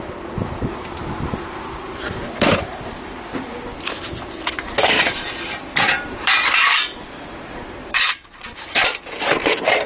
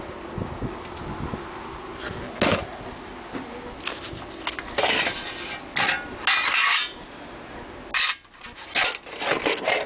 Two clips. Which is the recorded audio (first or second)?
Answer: second